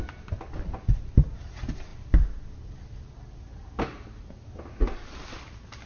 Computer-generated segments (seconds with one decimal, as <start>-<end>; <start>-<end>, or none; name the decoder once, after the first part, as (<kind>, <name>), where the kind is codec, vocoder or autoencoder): none